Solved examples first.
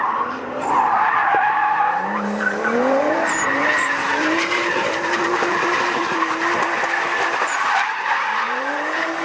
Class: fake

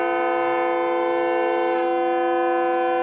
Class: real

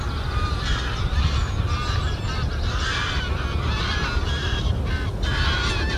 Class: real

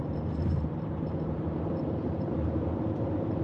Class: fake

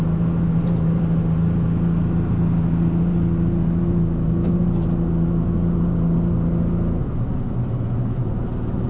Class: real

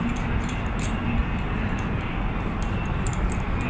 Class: real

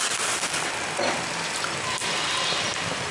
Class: real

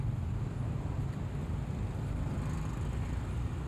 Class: real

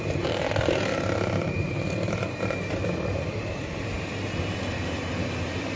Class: fake